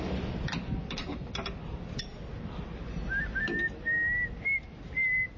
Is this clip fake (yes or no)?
no